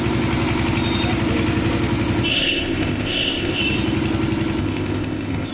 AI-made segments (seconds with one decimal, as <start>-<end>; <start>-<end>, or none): 2.3-3.6; 4.6-5.5